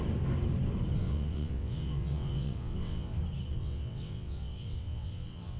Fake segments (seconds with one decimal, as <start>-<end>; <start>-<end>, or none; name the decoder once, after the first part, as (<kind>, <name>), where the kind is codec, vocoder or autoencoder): 1.0-3.2 (vocoder, WaveNeXt); 3.6-5.6